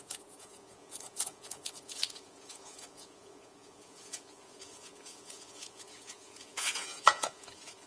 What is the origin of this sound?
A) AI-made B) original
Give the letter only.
A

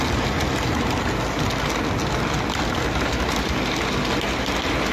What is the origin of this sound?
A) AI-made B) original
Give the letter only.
B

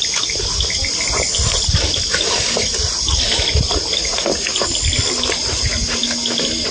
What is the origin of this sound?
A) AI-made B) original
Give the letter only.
B